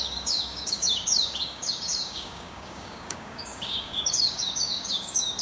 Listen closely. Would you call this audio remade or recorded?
remade